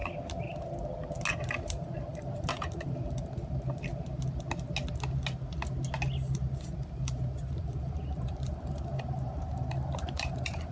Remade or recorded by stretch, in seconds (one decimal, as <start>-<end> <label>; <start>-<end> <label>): 0.0-1.3 recorded; 1.3-3.9 remade; 3.9-6.7 recorded; 6.7-10.7 remade